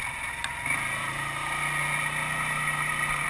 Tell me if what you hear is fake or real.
real